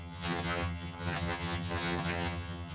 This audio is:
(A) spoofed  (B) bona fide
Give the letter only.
A